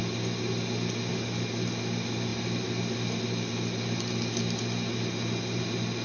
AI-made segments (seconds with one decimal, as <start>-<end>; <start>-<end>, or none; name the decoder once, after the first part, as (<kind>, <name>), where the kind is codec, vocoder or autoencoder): none